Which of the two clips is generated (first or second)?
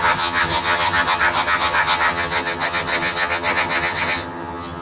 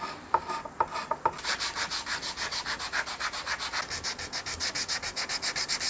first